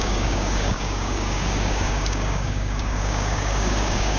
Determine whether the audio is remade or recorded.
remade